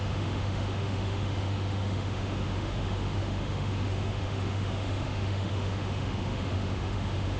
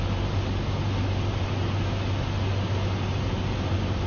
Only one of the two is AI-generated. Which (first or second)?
first